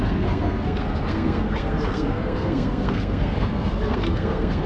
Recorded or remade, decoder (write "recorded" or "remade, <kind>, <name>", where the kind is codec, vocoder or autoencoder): remade, codec, SNAC